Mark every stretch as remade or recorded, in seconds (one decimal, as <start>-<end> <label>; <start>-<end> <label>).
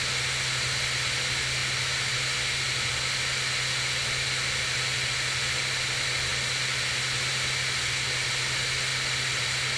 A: 0.0-9.8 recorded